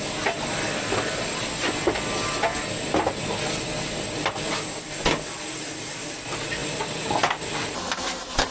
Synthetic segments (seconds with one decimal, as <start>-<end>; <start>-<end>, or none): none